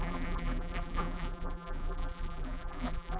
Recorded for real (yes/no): no